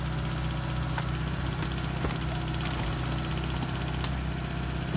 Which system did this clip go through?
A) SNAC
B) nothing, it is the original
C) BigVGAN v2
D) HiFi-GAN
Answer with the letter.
B